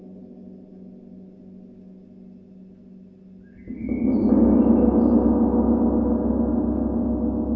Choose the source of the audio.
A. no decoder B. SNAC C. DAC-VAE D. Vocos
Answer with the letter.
A